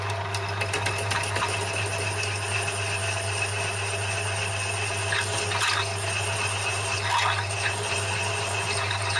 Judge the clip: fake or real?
real